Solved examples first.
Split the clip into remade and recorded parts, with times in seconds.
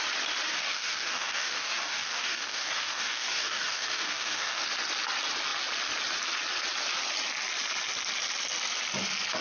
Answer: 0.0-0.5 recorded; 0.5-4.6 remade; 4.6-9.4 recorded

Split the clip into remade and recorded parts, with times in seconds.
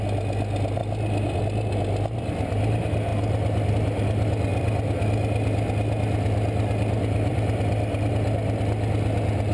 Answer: 0.0-0.8 recorded; 0.8-1.4 remade; 1.4-3.1 recorded; 3.1-3.7 remade; 3.7-4.5 recorded; 4.5-8.1 remade; 8.1-9.5 recorded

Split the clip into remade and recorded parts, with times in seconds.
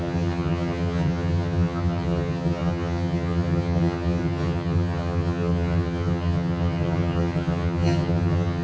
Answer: 0.0-8.6 remade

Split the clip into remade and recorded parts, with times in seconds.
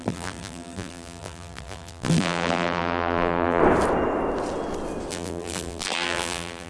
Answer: 0.0-3.6 remade; 3.6-5.1 recorded; 5.1-6.7 remade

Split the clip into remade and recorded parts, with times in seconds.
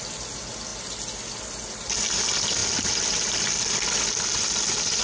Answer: 0.0-5.0 recorded